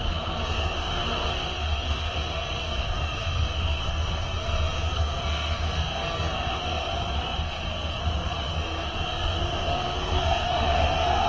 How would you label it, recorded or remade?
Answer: remade